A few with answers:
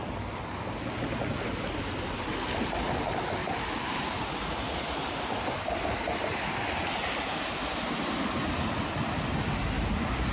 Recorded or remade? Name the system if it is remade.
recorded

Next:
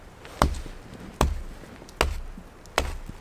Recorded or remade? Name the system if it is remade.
recorded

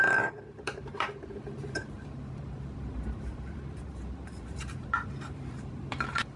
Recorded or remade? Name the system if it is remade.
remade, vocoder, BigVGAN v2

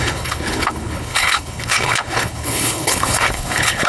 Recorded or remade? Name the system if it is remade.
remade, codec, HILCodec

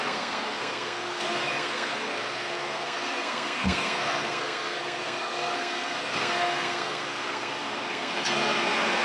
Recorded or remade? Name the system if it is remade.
remade, codec, SNAC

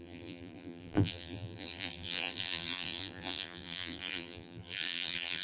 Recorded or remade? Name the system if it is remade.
remade, vocoder, BigVGAN v2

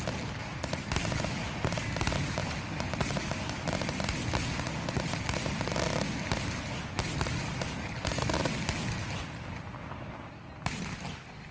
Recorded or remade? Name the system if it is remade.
recorded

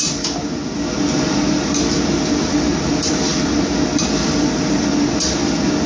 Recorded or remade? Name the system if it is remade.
recorded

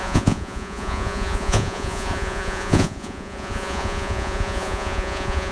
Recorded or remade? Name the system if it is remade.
remade, vocoder, Vocos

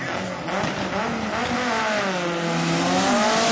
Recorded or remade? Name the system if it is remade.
recorded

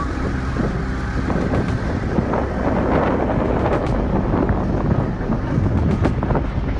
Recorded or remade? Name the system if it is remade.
recorded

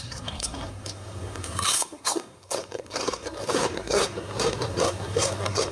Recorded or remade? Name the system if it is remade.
remade, codec, SNAC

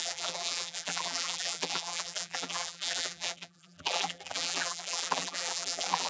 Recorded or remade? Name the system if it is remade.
remade, vocoder, BigVGAN v2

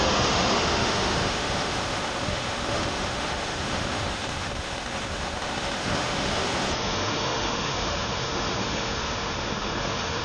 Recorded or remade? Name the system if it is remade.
remade, autoencoder, DAC-VAE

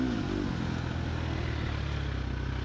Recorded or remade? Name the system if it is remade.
recorded